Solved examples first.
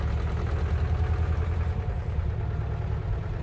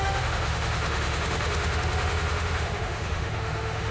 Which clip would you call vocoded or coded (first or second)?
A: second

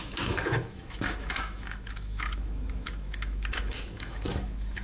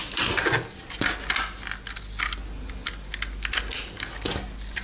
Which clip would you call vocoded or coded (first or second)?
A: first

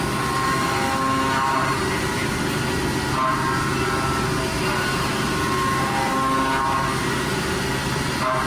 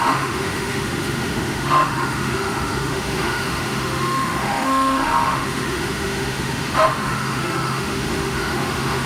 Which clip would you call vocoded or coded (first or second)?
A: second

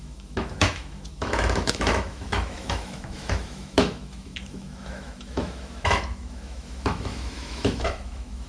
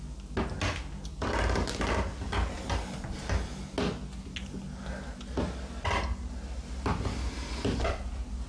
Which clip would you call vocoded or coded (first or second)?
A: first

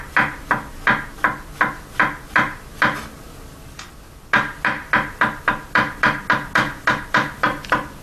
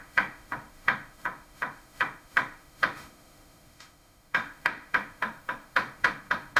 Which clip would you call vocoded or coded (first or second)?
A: second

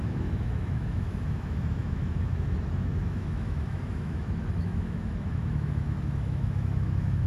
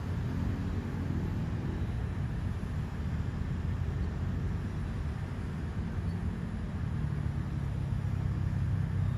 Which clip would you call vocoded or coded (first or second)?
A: first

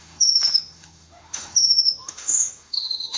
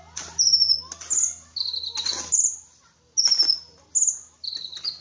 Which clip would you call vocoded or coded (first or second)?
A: first